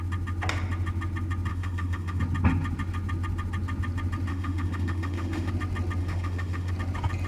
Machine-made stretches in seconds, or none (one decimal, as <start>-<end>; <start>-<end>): 1.5-2.2; 4.3-5.5; 6.0-6.7